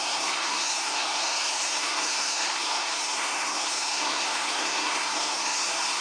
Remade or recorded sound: remade